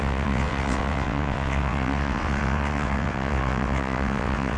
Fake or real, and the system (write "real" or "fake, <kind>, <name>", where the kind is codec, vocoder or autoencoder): fake, vocoder, WaveNeXt